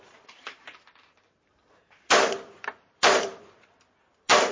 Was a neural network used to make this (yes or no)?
yes